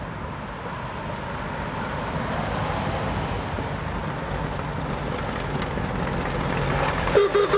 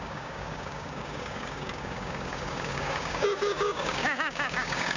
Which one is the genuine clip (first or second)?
first